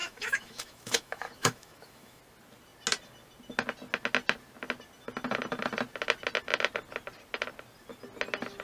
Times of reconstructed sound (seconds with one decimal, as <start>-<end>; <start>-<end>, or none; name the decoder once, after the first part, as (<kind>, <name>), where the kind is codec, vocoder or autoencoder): 0.0-2.2 (autoencoder, DAC-VAE)